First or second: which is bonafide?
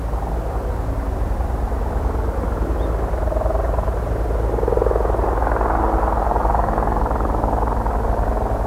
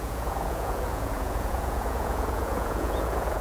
first